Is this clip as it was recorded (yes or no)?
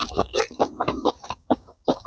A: no